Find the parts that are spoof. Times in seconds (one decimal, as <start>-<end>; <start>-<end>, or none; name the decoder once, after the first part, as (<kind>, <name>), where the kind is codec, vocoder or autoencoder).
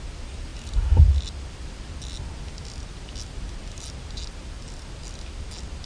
none